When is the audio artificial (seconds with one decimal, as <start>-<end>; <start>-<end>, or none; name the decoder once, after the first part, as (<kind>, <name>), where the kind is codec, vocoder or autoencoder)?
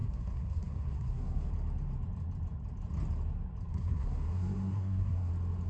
0.0-1.5 (codec, SNAC); 3.7-5.3